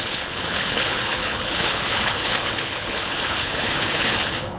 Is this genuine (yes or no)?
no